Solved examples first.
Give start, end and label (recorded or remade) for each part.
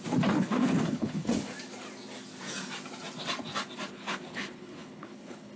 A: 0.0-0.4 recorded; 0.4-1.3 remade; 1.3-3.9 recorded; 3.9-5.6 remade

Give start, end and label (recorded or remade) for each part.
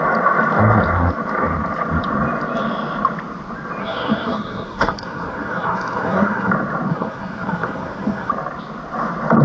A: 0.0-3.8 recorded; 3.8-6.5 remade; 6.5-6.9 recorded; 6.9-8.3 remade; 8.3-9.4 recorded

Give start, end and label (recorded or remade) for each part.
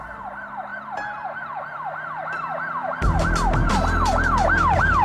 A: 0.0-0.7 recorded; 0.7-1.6 remade; 1.6-5.0 recorded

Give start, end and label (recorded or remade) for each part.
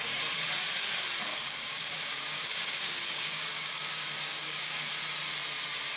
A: 0.0-1.3 recorded; 1.3-4.9 remade; 4.9-6.0 recorded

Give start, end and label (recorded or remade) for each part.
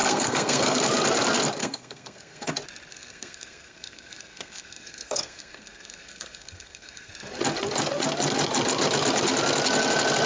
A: 0.0-0.8 remade; 0.8-1.6 recorded; 1.6-2.5 remade; 2.5-2.9 recorded; 2.9-7.1 remade; 7.1-10.3 recorded